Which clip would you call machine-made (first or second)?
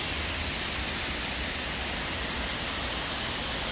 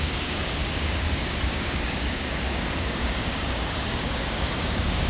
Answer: second